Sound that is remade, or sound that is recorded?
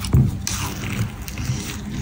recorded